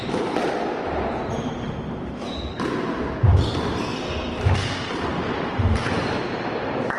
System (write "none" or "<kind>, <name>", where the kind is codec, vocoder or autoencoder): none